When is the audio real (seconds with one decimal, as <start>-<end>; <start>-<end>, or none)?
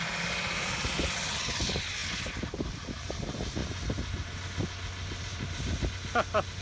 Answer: 0.0-5.3; 5.9-6.6